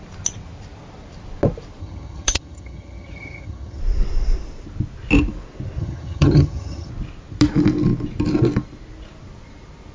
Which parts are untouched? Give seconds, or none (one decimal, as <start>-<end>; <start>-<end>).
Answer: 0.0-1.8; 3.8-5.8; 6.9-9.9